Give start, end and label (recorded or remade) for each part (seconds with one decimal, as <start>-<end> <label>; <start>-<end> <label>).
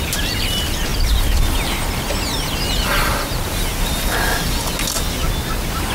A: 0.0-5.9 recorded